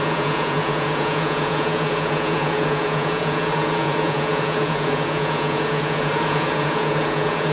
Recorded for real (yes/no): no